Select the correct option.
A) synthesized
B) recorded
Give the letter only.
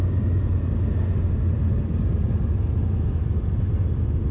B